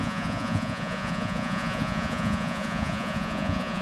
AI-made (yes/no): yes